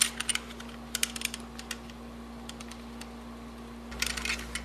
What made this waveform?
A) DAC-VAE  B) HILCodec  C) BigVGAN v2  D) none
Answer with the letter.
D